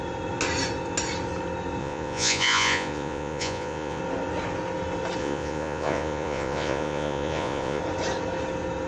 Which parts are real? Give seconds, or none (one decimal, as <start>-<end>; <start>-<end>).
0.0-1.8; 4.0-5.2; 7.8-8.9